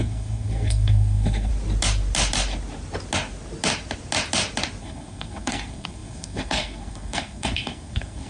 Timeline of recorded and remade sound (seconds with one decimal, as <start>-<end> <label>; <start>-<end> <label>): 0.0-1.5 remade; 1.5-4.8 recorded; 4.8-8.3 remade